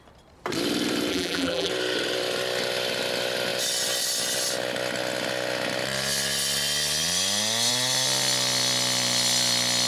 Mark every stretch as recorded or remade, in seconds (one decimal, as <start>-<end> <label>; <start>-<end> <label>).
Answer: 0.0-1.1 recorded; 1.1-1.7 remade; 1.7-9.9 recorded